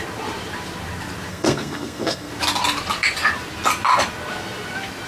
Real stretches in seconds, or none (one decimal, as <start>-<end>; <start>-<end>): 0.0-1.3; 2.3-5.1